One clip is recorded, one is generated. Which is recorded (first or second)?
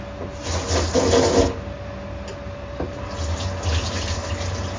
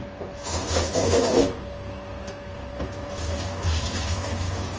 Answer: first